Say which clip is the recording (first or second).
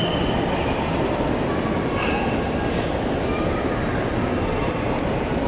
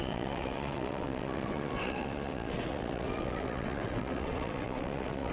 first